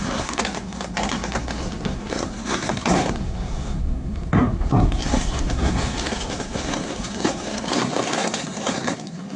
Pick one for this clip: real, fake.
fake